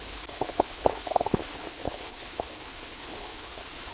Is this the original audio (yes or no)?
no